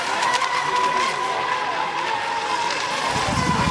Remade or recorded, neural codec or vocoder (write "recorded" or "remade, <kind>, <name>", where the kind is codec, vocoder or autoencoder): recorded